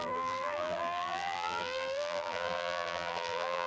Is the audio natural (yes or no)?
no